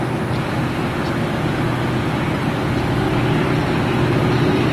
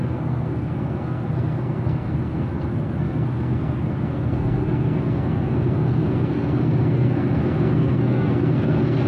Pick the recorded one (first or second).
first